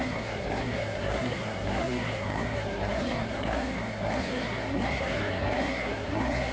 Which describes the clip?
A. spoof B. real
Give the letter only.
A